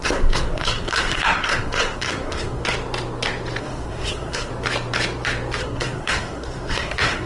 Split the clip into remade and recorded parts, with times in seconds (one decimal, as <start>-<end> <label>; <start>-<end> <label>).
0.0-2.6 remade; 2.6-3.6 recorded; 3.6-4.5 remade; 4.5-5.6 recorded; 5.6-7.3 remade